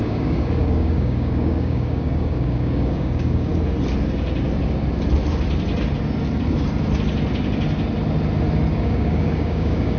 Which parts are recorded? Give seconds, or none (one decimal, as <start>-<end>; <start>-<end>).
3.5-8.7